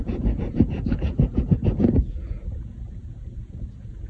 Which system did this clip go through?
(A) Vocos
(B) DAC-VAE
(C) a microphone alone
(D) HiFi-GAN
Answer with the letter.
A